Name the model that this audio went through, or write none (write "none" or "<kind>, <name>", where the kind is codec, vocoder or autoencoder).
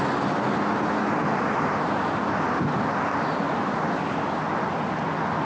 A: none